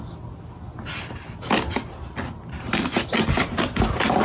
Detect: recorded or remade recorded